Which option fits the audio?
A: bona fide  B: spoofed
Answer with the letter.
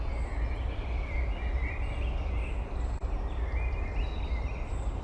A